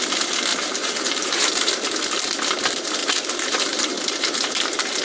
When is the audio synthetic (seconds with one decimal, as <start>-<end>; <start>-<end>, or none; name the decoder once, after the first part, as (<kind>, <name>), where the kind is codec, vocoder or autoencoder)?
0.5-1.7 (vocoder, BigVGAN v2); 3.0-5.0